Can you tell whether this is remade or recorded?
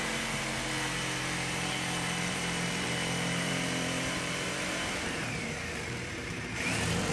remade